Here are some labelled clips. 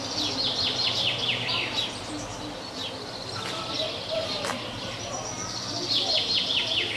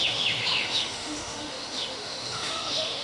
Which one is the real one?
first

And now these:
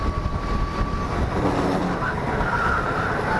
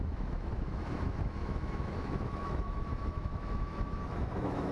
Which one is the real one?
first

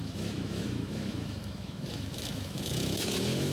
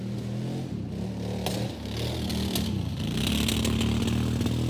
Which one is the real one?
second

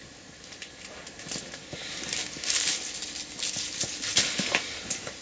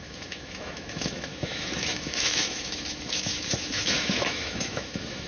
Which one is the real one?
first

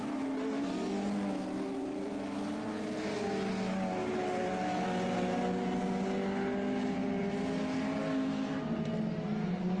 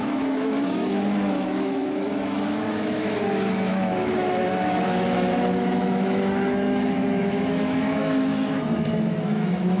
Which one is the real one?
first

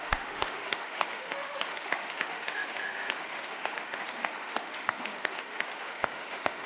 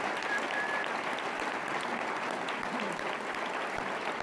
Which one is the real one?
second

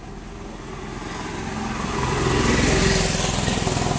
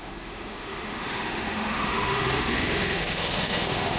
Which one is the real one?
first